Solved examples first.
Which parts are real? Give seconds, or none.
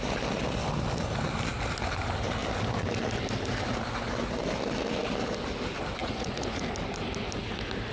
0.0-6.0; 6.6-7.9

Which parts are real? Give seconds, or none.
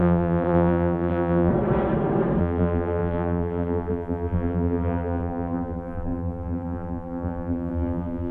1.5-2.4